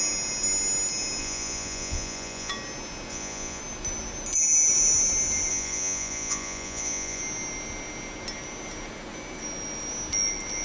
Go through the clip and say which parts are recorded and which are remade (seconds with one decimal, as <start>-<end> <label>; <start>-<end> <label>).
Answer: 0.0-1.2 recorded; 1.2-2.5 remade; 2.5-3.1 recorded; 3.1-3.6 remade; 3.6-5.5 recorded; 5.5-7.2 remade; 7.2-10.6 recorded